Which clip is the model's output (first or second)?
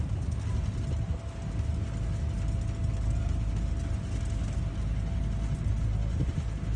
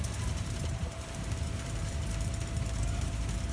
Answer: second